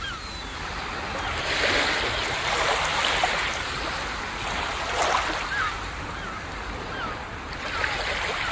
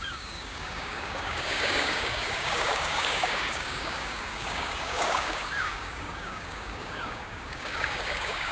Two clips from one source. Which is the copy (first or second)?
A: second